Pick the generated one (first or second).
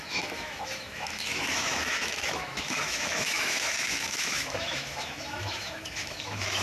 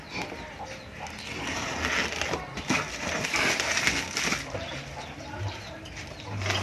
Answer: first